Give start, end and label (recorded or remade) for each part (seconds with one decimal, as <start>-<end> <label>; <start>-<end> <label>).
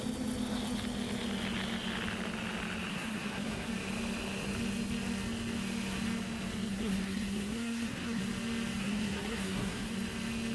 0.0-2.9 recorded; 2.9-3.7 remade; 3.7-6.7 recorded; 6.7-8.2 remade; 8.2-8.8 recorded; 8.8-9.9 remade; 9.9-10.5 recorded